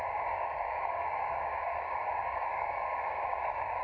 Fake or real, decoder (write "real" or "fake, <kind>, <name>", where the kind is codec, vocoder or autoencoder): fake, codec, DAC